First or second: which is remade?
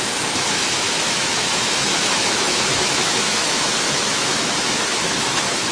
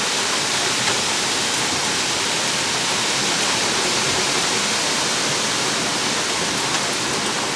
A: first